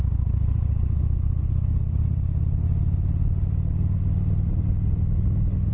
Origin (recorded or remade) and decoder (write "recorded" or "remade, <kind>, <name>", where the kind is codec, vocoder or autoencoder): recorded